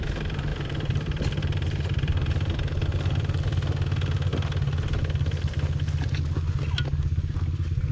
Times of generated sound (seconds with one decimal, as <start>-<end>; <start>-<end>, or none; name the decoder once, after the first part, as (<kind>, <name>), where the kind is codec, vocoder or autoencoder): 0.5-2.3 (vocoder, BigVGAN v2)